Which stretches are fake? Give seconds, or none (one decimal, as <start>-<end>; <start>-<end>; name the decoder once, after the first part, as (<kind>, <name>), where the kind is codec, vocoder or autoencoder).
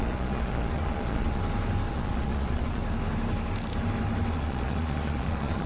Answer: 0.0-1.4 (vocoder, Vocos); 1.9-2.8; 4.3-5.7